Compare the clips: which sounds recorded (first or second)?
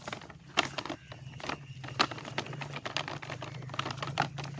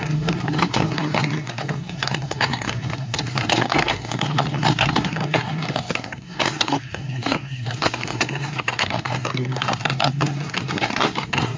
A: first